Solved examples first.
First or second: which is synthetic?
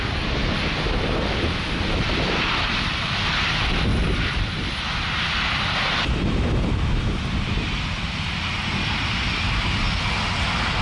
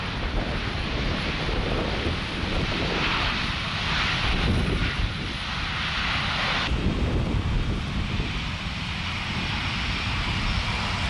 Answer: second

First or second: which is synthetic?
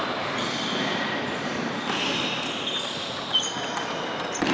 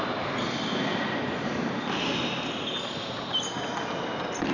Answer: first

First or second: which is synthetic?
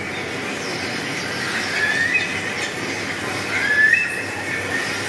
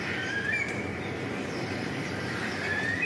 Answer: second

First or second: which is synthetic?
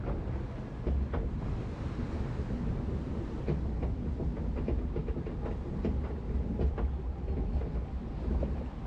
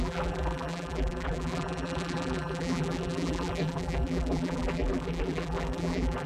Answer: second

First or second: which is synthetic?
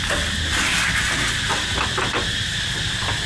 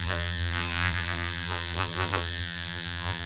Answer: second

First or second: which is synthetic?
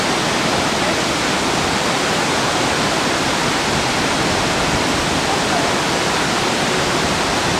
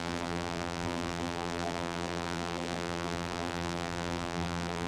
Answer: second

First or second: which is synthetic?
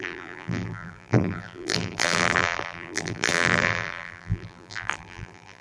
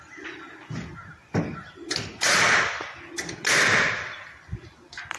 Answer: first